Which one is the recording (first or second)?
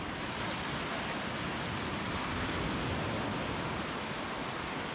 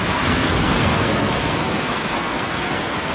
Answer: first